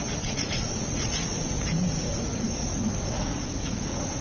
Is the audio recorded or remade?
remade